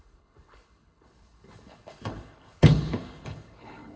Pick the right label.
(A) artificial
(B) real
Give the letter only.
A